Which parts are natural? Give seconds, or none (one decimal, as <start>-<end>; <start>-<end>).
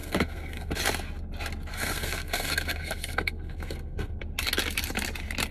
0.7-1.7; 4.2-5.5